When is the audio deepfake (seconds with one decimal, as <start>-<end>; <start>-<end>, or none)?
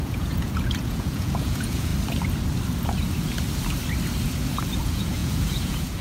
0.0-1.9; 4.8-6.0